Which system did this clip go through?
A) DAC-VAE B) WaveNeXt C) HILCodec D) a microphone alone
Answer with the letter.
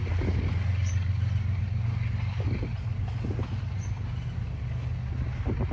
D